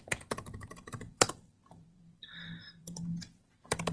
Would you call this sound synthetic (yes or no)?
yes